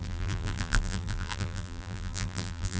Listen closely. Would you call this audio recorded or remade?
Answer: remade